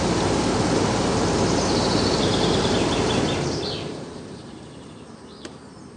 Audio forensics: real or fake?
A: fake